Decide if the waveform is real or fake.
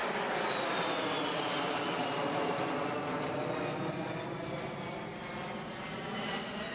real